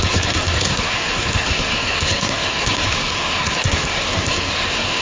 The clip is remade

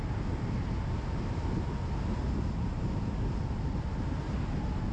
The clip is recorded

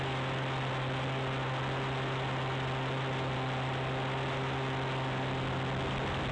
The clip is recorded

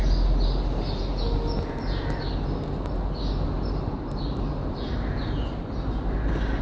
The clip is recorded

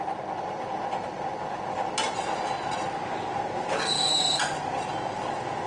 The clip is recorded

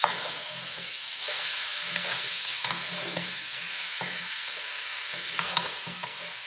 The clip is remade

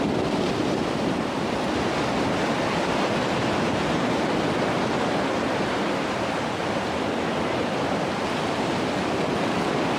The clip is recorded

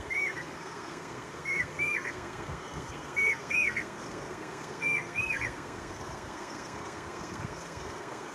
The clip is remade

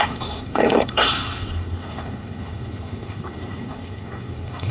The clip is remade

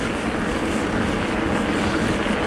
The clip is recorded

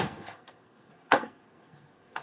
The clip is remade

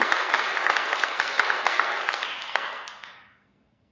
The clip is remade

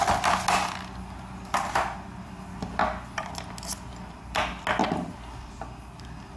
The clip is recorded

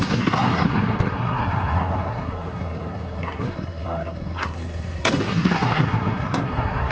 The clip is remade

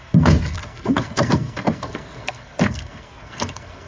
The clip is remade